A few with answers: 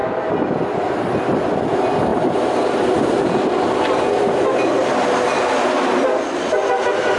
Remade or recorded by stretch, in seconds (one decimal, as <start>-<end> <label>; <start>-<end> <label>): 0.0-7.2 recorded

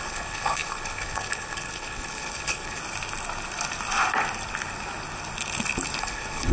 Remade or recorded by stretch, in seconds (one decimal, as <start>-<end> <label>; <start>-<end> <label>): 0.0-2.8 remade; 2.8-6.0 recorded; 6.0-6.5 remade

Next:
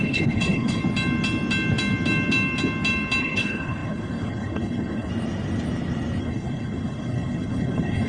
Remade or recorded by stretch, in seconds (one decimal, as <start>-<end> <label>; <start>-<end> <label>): 0.0-0.8 remade; 0.8-3.2 recorded; 3.2-5.1 remade; 5.1-6.2 recorded; 6.2-8.1 remade

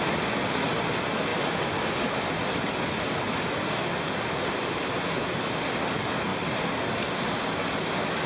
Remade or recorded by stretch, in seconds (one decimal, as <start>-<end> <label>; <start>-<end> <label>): 0.0-8.3 recorded